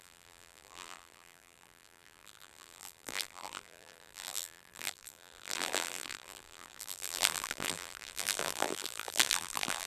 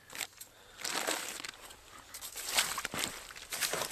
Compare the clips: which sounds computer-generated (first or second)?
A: first